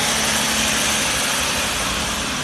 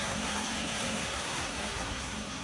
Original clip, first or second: first